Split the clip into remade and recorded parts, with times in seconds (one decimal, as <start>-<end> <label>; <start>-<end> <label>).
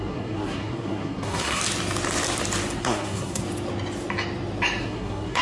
0.0-1.6 remade; 1.6-2.8 recorded; 2.8-3.4 remade; 3.4-4.8 recorded; 4.8-5.4 remade